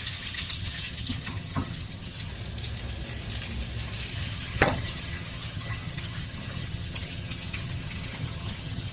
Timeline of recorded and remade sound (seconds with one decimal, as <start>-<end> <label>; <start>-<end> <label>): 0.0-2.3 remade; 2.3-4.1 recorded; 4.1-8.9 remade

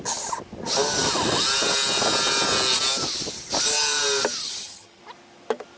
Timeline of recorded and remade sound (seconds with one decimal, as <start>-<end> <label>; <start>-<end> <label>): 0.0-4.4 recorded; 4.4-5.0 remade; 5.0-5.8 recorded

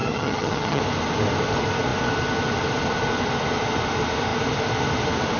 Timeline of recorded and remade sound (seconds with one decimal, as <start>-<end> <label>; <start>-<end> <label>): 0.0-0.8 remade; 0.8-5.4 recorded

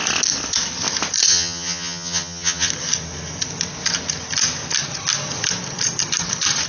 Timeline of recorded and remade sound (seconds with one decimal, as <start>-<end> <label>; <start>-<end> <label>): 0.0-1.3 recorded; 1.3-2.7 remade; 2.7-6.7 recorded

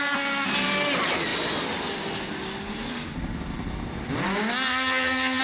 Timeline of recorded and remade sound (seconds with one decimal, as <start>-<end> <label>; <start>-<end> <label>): 0.0-4.7 recorded; 4.7-5.4 remade